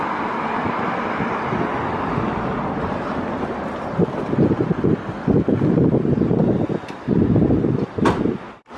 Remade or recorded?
recorded